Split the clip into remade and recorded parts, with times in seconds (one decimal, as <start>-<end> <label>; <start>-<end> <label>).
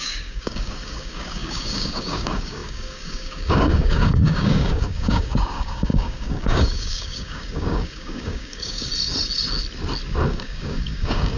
0.0-8.9 remade; 8.9-10.3 recorded; 10.3-11.4 remade